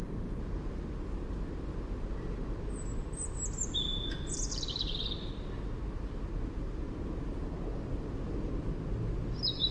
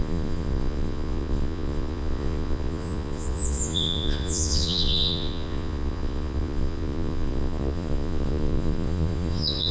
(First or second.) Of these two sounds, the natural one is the first